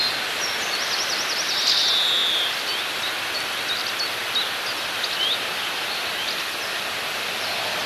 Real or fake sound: real